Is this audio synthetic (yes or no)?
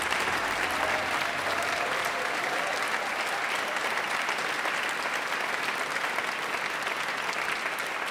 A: no